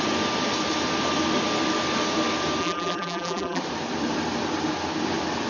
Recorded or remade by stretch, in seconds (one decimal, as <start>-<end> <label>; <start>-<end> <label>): 0.0-2.6 recorded; 2.6-3.6 remade; 3.6-5.5 recorded